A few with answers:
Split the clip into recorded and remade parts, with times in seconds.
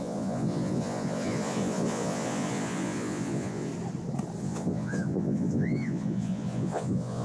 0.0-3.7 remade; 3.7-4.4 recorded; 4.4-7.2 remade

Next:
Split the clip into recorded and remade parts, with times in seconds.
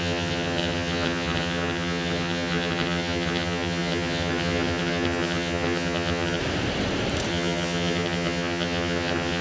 0.0-6.4 remade; 6.4-7.3 recorded; 7.3-9.4 remade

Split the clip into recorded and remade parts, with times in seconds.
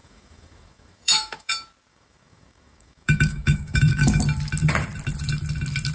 0.0-1.5 remade; 1.5-1.9 recorded; 1.9-4.2 remade; 4.2-5.9 recorded